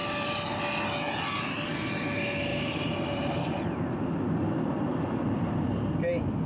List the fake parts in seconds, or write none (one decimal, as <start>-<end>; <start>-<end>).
0.0-0.6; 2.5-6.5